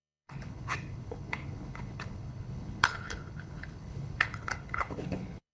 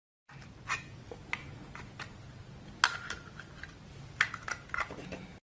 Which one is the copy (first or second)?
first